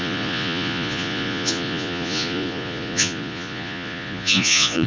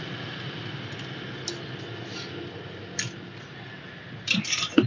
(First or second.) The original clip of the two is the second